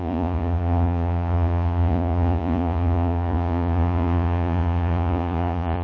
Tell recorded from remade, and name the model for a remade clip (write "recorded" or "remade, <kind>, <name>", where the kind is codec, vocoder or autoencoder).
remade, vocoder, Vocos